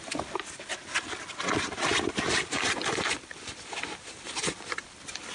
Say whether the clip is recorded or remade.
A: recorded